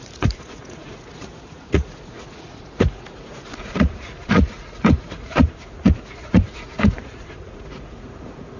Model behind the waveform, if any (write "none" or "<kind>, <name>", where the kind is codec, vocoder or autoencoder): vocoder, Vocos